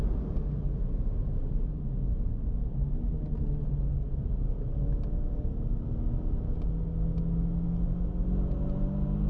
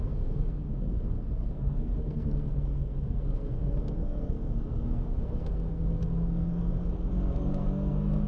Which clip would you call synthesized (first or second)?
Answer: second